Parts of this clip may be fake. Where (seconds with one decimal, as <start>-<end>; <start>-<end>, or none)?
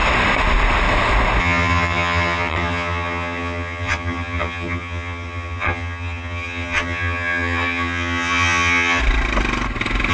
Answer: 1.4-9.0